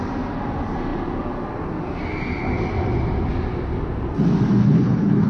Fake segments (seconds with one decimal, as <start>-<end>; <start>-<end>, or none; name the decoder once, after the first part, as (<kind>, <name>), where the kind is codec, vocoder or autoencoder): 4.6-5.3 (codec, HILCodec)

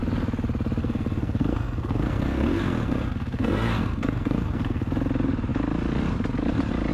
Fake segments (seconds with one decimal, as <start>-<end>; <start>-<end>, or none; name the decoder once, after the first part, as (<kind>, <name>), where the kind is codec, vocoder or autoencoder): 0.8-4.9 (codec, SNAC)

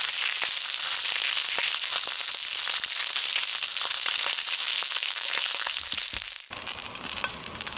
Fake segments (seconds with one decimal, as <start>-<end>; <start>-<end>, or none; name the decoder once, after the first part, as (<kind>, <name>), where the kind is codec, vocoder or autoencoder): 4.6-5.7 (autoencoder, DAC-VAE)

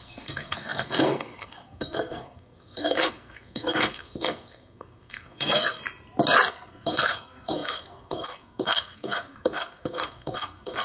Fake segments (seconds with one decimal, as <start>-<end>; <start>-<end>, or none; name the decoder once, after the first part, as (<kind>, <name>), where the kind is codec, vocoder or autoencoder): 0.0-5.8 (codec, SNAC); 6.5-10.8

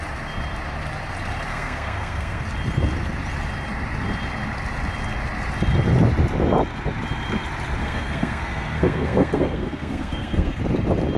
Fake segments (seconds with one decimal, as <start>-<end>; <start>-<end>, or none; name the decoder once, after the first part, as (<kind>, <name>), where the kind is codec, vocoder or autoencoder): 1.5-2.4 (codec, SNAC); 7.8-10.6

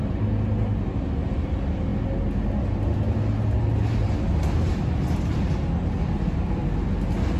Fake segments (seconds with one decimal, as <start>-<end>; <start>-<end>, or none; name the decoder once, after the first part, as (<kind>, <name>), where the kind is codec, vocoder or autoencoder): 0.0-1.9 (vocoder, BigVGAN v2); 5.9-6.6